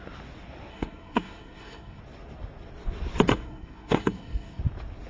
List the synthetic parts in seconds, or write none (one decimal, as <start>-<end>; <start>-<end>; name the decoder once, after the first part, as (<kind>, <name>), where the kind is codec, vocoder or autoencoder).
0.7-2.0 (codec, SNAC); 3.3-4.6